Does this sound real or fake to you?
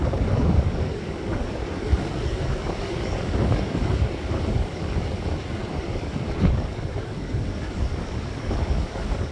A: fake